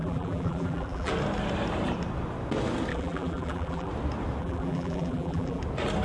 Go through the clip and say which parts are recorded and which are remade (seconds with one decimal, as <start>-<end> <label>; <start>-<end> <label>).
0.0-1.1 remade; 1.1-2.9 recorded; 2.9-3.9 remade; 3.9-4.4 recorded; 4.4-5.6 remade; 5.6-6.0 recorded